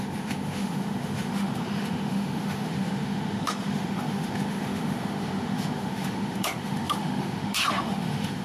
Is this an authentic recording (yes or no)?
no